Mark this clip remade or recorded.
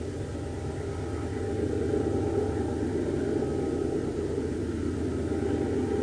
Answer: recorded